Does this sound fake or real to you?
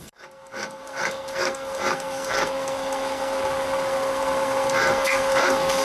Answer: fake